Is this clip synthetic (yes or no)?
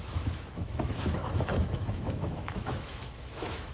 yes